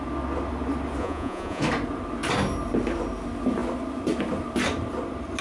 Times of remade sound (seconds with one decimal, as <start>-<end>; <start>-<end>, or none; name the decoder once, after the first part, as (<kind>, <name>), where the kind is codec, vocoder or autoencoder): 1.0-1.6 (vocoder, Vocos)